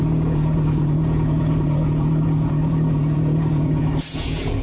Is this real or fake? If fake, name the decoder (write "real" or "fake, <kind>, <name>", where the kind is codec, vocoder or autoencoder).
fake, vocoder, Vocos